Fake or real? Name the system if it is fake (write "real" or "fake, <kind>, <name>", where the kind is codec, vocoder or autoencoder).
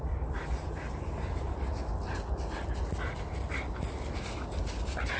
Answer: real